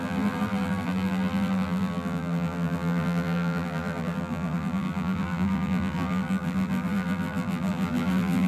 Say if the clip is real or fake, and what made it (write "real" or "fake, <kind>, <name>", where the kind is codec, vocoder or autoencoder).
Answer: fake, vocoder, BigVGAN v2